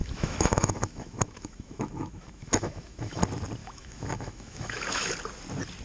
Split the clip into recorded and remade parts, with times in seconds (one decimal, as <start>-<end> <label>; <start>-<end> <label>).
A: 0.0-3.2 remade; 3.2-3.6 recorded; 3.6-5.1 remade; 5.1-5.8 recorded

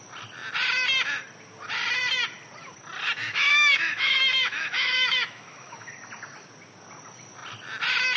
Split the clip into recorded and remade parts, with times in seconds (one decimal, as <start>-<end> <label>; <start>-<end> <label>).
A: 0.0-3.2 recorded; 3.2-5.9 remade; 5.9-8.2 recorded

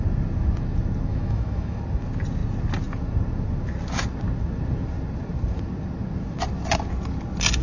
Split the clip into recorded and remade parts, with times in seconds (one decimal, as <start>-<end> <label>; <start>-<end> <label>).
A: 0.0-1.1 recorded; 1.1-1.8 remade; 1.8-7.6 recorded

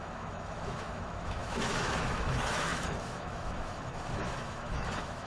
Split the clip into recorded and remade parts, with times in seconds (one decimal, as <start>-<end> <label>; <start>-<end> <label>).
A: 0.0-5.3 remade

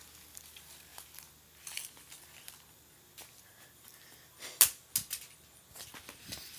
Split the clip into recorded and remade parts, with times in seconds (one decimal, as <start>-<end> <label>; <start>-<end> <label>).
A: 0.0-6.6 recorded

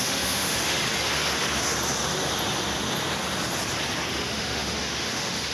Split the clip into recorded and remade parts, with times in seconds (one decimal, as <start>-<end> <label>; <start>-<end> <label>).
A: 0.0-0.8 remade; 0.8-4.1 recorded; 4.1-5.5 remade